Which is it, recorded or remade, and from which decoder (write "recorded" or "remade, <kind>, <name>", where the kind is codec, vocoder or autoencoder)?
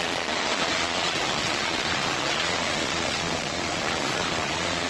remade, vocoder, Vocos